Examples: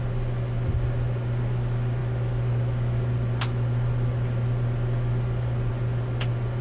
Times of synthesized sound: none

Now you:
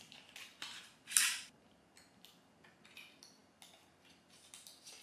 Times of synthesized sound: none

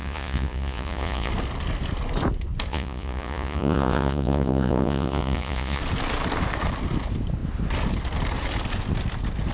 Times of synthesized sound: 0.0-1.3 (vocoder, Vocos); 2.7-5.8

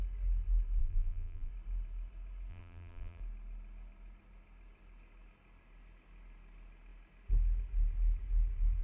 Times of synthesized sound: 0.8-1.5 (vocoder, BigVGAN v2); 2.5-3.2

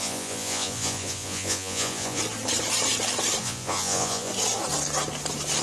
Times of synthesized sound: 0.0-2.2 (vocoder, Vocos); 3.4-4.3

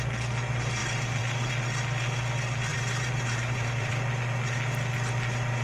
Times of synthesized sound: 0.8-1.5 (vocoder, BigVGAN v2); 2.7-3.9

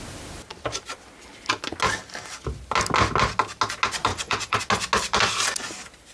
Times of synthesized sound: 4.1-4.6 (vocoder, WaveNeXt)

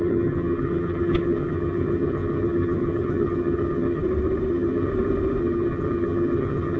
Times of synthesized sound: 0.0-4.0 (vocoder, HiFi-GAN); 4.5-4.9; 5.4-6.8